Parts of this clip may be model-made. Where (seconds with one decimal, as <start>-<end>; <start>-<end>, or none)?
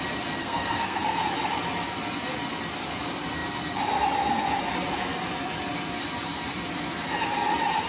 0.4-1.2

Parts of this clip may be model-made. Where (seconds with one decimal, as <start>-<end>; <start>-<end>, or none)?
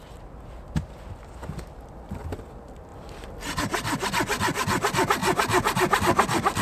none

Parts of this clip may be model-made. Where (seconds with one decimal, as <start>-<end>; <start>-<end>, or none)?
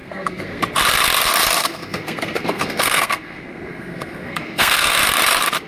0.0-0.6; 1.6-5.0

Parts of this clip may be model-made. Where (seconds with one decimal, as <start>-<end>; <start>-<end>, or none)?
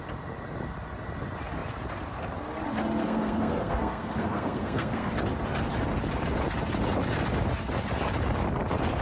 3.0-5.1